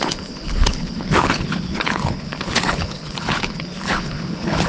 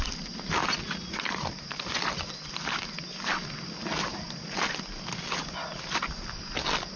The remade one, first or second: first